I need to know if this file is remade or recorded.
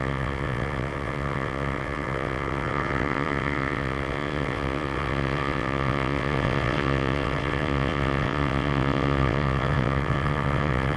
remade